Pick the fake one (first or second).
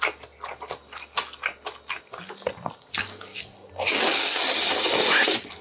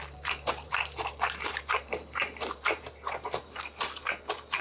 second